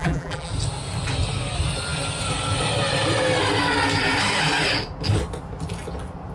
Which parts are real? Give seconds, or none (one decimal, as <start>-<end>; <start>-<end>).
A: 0.5-6.3